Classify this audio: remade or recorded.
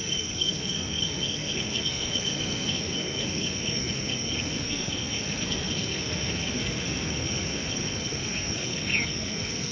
remade